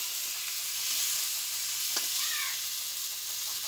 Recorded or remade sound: recorded